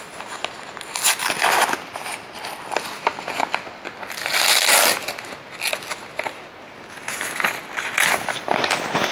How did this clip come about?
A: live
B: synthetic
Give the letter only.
A